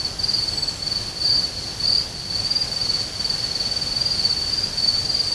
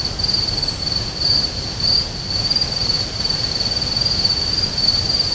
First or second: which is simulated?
second